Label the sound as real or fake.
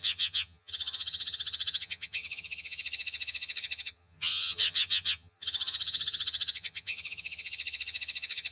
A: fake